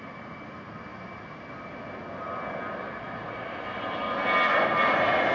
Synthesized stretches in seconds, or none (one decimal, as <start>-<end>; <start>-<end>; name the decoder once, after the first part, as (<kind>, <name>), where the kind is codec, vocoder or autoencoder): none